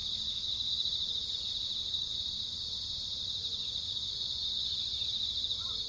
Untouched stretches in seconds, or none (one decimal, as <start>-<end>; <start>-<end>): 0.0-3.4; 4.9-5.9